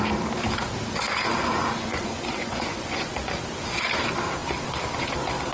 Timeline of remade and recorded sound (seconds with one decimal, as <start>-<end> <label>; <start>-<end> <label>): 0.0-1.3 recorded; 1.3-3.1 remade; 3.1-5.5 recorded